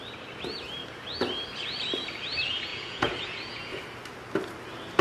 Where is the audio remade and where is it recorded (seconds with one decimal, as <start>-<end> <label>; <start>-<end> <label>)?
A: 0.0-2.7 recorded; 2.7-3.8 remade; 3.8-5.0 recorded